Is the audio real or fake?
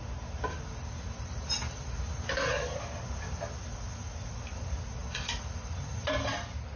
real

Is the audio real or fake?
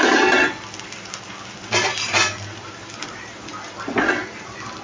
fake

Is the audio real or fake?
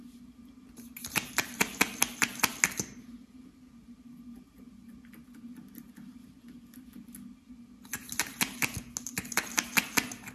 real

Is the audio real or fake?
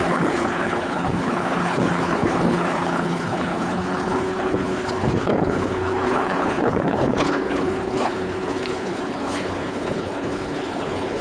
fake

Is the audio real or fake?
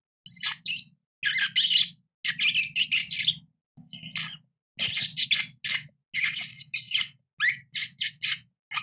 real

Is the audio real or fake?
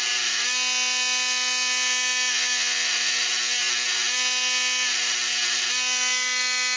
real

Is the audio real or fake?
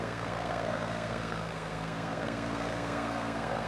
fake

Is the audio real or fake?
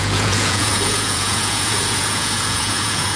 fake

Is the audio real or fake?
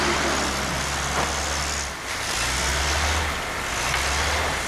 real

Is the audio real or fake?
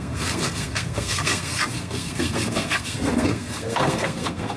fake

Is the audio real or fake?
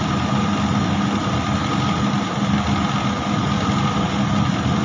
real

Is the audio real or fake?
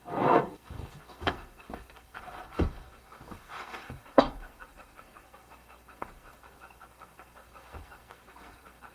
fake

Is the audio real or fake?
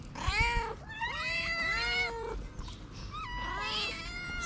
real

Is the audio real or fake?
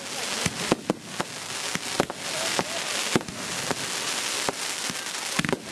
real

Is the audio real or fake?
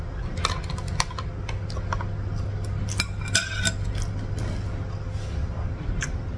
real